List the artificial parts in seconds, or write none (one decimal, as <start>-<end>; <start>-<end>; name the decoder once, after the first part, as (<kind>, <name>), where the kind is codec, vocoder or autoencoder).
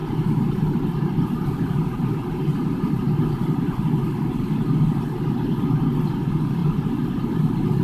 0.0-4.1 (vocoder, BigVGAN v2); 6.6-7.2